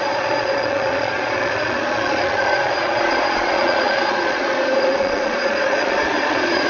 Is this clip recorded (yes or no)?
no